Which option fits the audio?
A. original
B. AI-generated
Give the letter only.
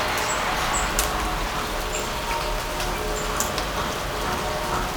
A